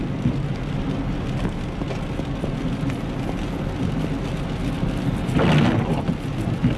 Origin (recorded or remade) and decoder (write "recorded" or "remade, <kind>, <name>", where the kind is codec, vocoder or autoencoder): recorded